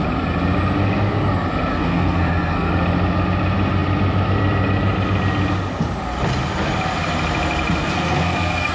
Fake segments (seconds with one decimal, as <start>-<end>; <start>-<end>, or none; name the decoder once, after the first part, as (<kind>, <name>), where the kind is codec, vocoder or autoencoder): 1.7-2.7 (codec, SNAC); 7.8-8.7